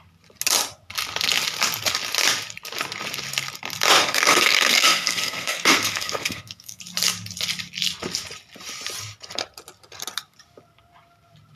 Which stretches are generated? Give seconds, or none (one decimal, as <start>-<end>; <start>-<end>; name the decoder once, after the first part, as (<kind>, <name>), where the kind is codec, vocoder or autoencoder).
4.0-6.8 (codec, SNAC)